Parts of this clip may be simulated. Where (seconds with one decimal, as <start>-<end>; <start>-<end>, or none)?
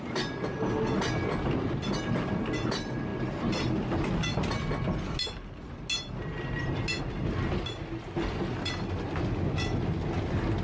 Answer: none